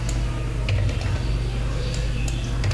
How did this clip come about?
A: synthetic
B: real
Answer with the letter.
B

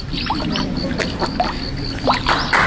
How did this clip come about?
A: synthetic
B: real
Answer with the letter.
B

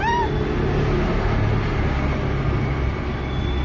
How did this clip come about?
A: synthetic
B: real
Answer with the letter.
B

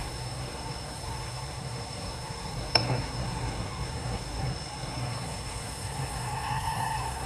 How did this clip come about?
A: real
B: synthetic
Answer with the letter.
B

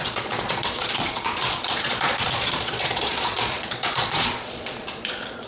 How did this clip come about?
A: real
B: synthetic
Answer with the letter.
B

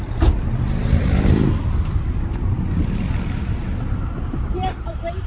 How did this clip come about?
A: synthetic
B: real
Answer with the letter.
A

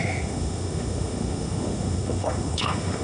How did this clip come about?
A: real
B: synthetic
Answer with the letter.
B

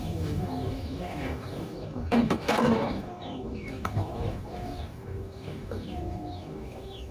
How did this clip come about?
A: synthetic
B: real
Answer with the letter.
A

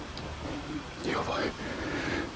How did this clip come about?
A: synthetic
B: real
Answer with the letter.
A